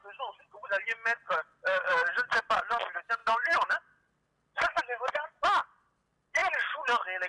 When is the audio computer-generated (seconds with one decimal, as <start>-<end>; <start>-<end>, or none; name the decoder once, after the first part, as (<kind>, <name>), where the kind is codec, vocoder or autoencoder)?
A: none